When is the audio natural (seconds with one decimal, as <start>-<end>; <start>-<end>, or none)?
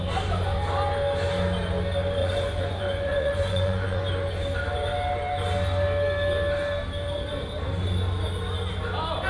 0.0-2.2; 4.1-9.3